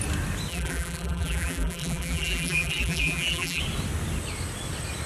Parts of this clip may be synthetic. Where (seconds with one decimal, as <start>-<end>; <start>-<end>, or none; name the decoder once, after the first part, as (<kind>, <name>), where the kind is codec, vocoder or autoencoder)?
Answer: 0.5-3.6 (vocoder, BigVGAN v2)